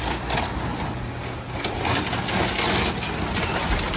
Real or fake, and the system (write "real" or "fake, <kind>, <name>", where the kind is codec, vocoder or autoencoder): real